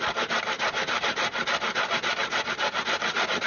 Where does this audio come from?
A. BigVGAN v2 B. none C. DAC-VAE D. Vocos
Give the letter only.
B